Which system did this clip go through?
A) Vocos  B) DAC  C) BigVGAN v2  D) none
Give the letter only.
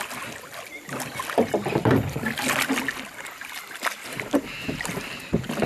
D